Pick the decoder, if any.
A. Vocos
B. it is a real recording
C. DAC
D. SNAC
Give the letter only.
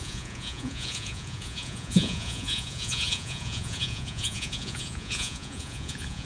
A